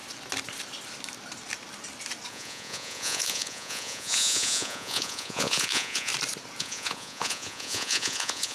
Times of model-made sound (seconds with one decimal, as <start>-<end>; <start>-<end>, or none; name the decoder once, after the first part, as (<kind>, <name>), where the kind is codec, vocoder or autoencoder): 2.3-6.1 (vocoder, Vocos); 6.6-8.5